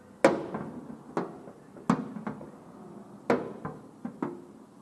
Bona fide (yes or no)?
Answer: yes